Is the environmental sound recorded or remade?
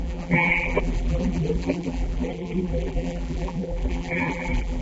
remade